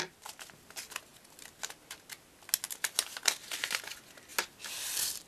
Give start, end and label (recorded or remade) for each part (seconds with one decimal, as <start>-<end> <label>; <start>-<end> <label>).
0.0-5.3 recorded